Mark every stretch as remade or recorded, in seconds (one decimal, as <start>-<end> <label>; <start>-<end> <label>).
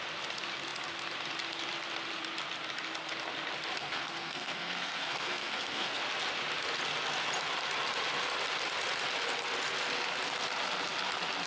0.0-3.8 recorded; 3.8-6.0 remade; 6.0-11.5 recorded